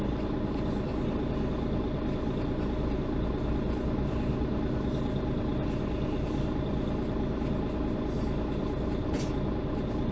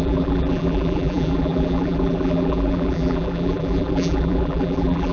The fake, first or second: second